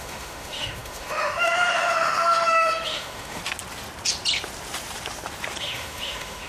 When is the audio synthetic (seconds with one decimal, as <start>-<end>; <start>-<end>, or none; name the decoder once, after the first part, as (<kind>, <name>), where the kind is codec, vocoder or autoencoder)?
0.0-3.4 (autoencoder, DAC-VAE); 5.6-6.5